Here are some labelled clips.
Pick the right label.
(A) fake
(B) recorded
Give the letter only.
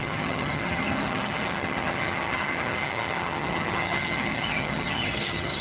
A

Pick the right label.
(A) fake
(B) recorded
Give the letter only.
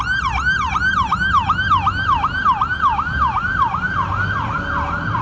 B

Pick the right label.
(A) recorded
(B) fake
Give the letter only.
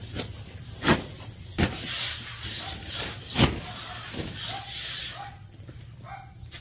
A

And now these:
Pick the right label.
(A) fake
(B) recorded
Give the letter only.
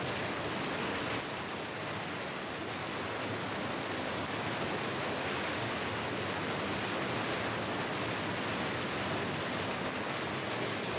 B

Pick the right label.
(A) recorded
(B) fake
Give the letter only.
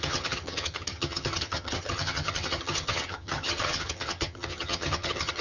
B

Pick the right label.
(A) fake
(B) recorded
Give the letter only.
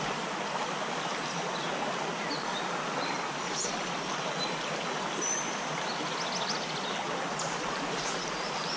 B